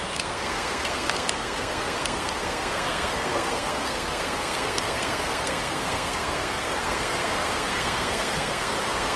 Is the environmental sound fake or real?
fake